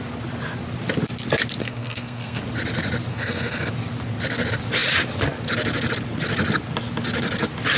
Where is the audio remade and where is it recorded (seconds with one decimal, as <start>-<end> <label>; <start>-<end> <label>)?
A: 0.0-1.6 recorded; 1.6-2.4 remade; 2.4-3.1 recorded; 3.1-3.7 remade; 3.7-7.8 recorded